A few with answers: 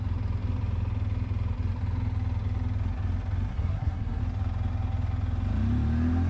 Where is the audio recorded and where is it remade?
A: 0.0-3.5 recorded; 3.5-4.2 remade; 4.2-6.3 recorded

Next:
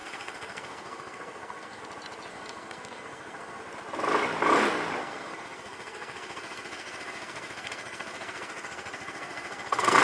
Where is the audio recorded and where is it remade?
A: 0.0-1.8 remade; 1.8-2.3 recorded; 2.3-3.6 remade; 3.6-5.0 recorded; 5.0-10.0 remade

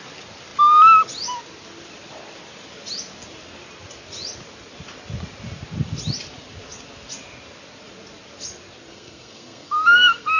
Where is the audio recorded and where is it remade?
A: 0.0-8.9 recorded; 8.9-10.4 remade

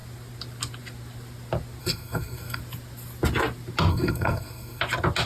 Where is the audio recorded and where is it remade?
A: 0.0-1.8 recorded; 1.8-2.6 remade; 2.6-3.9 recorded; 3.9-4.8 remade; 4.8-5.3 recorded

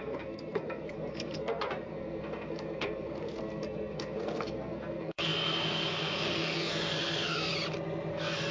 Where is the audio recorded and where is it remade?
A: 0.0-7.5 remade; 7.5-8.1 recorded; 8.1-8.5 remade

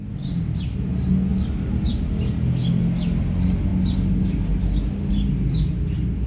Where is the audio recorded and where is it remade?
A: 0.0-6.3 recorded

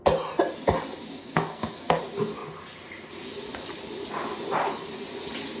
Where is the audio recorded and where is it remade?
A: 0.0-1.2 recorded; 1.2-2.0 remade; 2.0-5.6 recorded